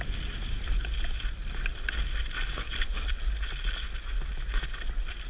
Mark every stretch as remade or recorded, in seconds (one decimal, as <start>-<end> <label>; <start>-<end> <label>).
0.0-5.3 recorded